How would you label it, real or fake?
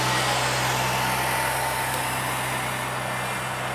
real